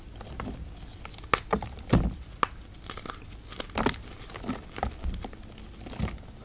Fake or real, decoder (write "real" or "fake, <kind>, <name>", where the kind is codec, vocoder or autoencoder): real